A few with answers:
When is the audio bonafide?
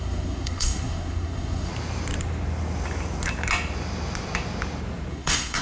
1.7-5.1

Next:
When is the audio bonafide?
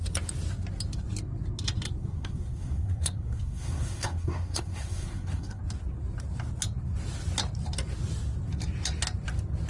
0.0-2.0; 5.6-9.7